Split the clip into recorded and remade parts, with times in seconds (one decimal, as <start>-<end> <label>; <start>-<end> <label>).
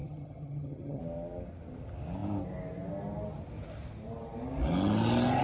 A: 0.0-1.0 remade; 1.0-5.4 recorded